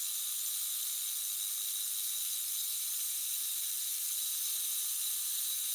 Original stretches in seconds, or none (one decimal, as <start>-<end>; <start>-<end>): 1.2-2.2